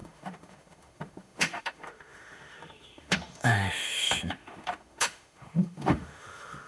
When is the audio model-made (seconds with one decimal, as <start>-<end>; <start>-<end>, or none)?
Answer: 0.0-6.7